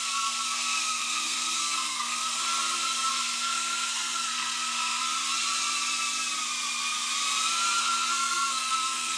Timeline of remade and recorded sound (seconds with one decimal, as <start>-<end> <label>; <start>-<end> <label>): 0.0-2.5 remade; 2.5-3.1 recorded; 3.1-5.0 remade; 5.0-7.8 recorded; 7.8-9.2 remade